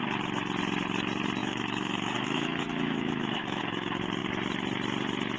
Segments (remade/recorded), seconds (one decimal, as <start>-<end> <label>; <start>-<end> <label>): 0.0-1.4 recorded; 1.4-3.6 remade; 3.6-5.4 recorded